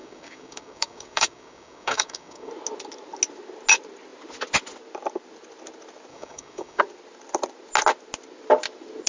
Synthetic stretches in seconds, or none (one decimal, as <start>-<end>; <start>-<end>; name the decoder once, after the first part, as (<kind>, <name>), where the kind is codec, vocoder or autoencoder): 0.0-2.5 (codec, DAC); 6.1-6.8